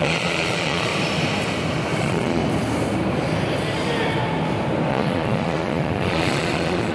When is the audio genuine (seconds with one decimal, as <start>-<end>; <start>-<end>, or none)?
0.9-2.0; 2.4-4.9